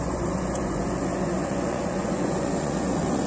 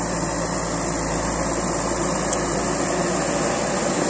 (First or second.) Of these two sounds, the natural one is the second